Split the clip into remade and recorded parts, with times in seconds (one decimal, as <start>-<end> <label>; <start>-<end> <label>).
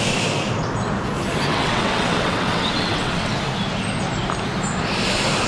0.0-1.5 recorded; 1.5-3.3 remade; 3.3-5.5 recorded